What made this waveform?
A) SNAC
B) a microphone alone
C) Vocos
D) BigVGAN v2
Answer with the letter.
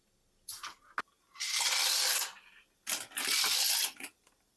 B